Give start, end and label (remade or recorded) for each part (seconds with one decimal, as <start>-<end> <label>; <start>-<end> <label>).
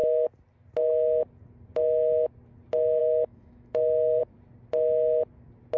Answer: 0.0-3.0 recorded; 3.0-4.2 remade; 4.2-5.8 recorded